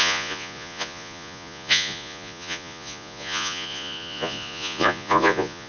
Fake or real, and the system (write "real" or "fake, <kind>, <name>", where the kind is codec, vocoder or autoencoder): fake, vocoder, Vocos